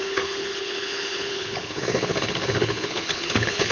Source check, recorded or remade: remade